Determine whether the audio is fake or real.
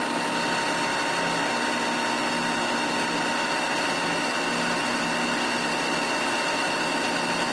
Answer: real